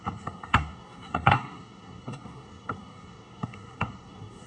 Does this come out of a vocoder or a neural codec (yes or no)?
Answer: yes